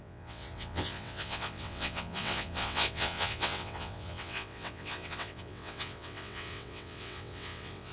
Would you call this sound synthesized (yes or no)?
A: yes